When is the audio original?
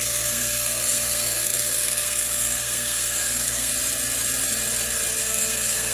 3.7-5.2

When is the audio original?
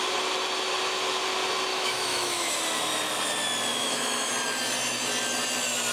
0.0-1.7; 2.5-3.7; 4.3-5.9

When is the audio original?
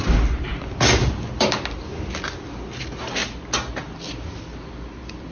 0.0-5.3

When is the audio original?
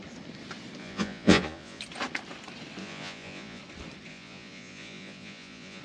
0.0-0.8; 1.8-2.8; 3.6-4.1